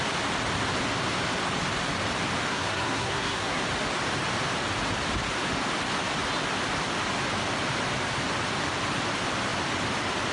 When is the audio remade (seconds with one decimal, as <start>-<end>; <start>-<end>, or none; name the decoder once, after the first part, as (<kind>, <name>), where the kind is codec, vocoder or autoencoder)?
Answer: 2.5-3.6 (codec, SNAC)